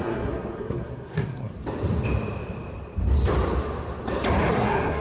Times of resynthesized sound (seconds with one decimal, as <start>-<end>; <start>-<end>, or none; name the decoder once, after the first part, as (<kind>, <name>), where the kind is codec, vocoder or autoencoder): 0.0-1.5 (codec, SNAC); 4.5-5.0